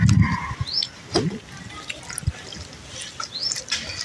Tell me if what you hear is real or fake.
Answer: real